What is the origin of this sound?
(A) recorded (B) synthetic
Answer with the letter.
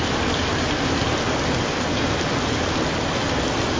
A